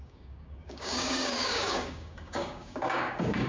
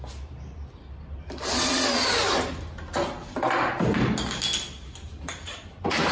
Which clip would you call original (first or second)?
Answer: second